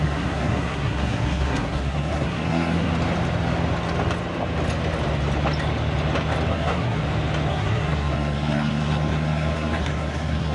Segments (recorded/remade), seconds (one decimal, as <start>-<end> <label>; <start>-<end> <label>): 0.0-2.9 remade; 2.9-6.5 recorded; 6.5-7.0 remade; 7.0-7.5 recorded; 7.5-10.5 remade